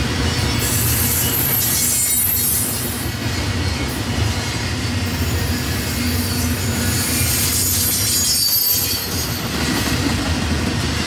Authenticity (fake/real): real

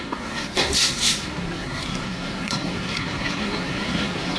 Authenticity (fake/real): fake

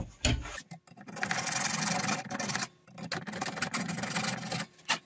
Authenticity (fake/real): real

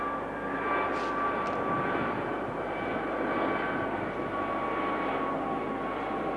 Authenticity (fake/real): real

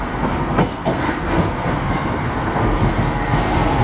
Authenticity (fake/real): fake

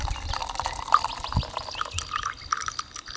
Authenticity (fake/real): real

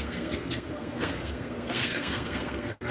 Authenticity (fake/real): fake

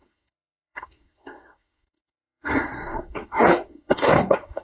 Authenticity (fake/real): fake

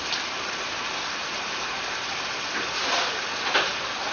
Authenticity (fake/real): real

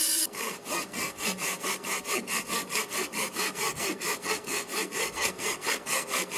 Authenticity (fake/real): fake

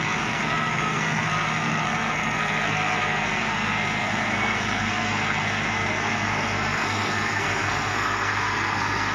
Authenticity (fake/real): fake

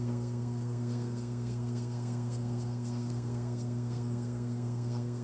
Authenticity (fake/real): fake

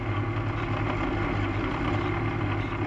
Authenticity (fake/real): real